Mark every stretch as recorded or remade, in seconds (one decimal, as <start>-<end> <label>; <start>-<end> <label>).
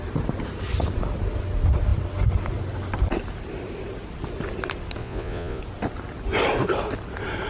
0.0-5.0 recorded; 5.0-5.6 remade; 5.6-7.5 recorded